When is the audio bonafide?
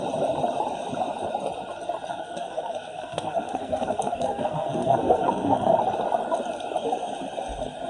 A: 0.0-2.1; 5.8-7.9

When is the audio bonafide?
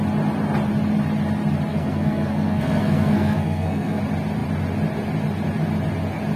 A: 0.0-1.7; 4.0-6.4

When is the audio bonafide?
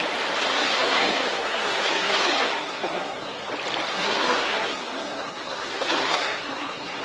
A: 0.0-0.5; 3.5-3.9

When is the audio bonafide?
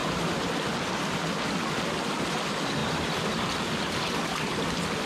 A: 0.0-5.1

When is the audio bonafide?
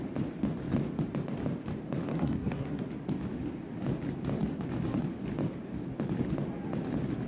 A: 0.0-2.1; 2.8-7.3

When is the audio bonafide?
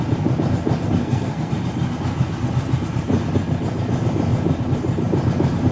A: 0.0-1.0; 1.5-5.7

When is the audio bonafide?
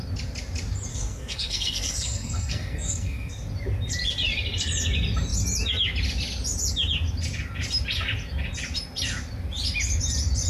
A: 0.0-0.9; 3.3-10.5